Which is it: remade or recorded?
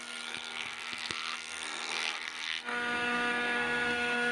remade